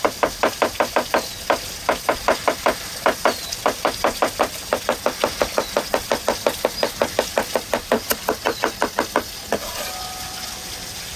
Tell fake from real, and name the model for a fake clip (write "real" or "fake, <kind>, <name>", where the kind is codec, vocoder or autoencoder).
fake, vocoder, BigVGAN v2